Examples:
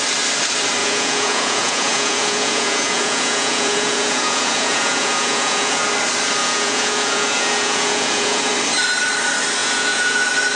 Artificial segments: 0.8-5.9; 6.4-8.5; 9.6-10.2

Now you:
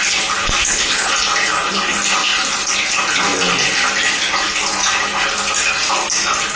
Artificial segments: 0.6-1.1

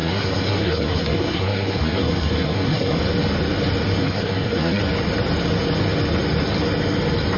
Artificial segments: 0.0-3.0; 4.0-4.8

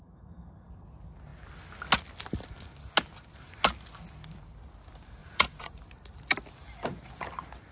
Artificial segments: 5.2-5.8

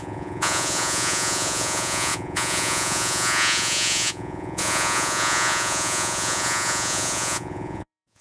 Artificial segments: 0.0-8.2

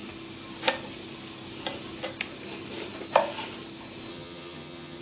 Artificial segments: 4.1-5.0

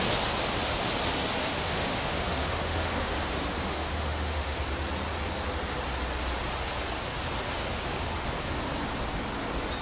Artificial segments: 1.4-4.6

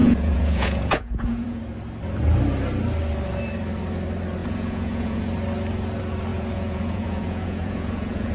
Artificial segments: 0.0-1.6; 4.4-5.3; 6.3-8.3